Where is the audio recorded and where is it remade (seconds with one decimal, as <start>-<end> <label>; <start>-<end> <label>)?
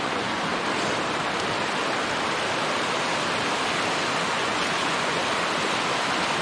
0.0-0.5 remade; 0.5-4.3 recorded; 4.3-5.2 remade; 5.2-6.4 recorded